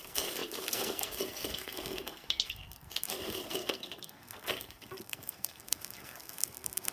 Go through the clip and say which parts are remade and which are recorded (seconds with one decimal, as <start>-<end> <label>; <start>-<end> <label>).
0.0-6.9 remade